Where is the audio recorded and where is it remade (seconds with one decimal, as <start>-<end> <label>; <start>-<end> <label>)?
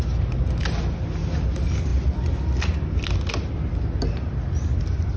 0.0-5.2 recorded